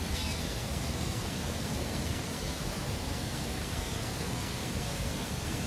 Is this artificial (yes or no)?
yes